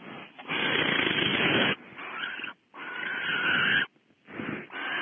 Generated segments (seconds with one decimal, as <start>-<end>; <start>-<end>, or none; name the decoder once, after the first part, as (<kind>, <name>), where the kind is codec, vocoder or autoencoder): none